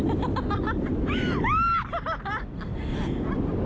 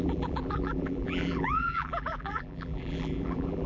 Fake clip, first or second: second